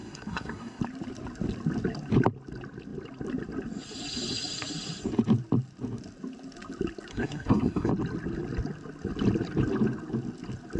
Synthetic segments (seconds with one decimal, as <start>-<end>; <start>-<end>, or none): 0.0-0.8; 7.1-7.9